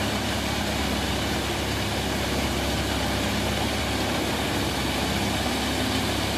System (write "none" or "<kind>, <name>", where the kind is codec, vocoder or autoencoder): none